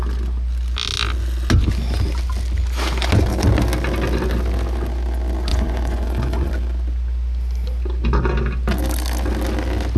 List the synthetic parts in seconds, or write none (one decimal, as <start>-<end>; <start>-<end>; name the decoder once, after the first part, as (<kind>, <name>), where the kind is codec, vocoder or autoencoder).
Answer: 5.5-6.5 (vocoder, Vocos)